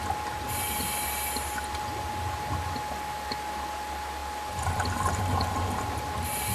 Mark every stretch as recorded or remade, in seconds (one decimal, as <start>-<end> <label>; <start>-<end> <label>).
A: 0.0-6.5 recorded